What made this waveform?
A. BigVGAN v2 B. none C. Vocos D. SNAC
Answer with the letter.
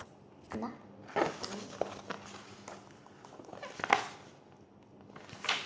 B